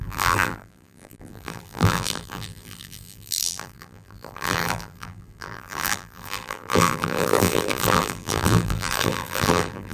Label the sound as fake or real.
fake